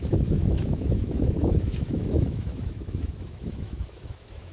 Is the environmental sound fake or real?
fake